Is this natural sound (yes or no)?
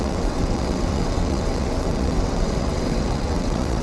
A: no